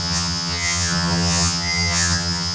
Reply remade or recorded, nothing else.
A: remade